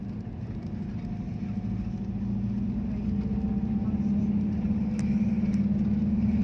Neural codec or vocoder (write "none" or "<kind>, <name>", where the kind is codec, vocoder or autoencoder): none